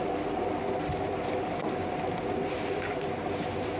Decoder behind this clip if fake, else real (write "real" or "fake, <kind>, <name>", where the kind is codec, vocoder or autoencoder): real